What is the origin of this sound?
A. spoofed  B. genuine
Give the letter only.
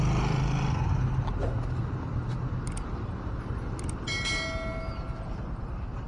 B